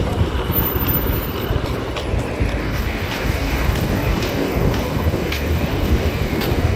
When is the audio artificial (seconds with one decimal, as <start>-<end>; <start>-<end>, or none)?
2.6-6.8